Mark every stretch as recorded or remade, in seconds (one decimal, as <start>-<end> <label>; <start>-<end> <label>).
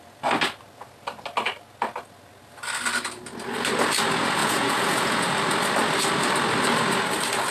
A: 0.0-4.4 recorded; 4.4-5.2 remade; 5.2-7.5 recorded